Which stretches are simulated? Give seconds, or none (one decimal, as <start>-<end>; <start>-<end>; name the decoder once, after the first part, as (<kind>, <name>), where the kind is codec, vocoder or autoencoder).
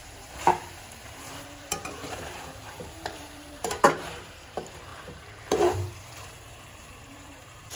0.0-7.8 (vocoder, BigVGAN v2)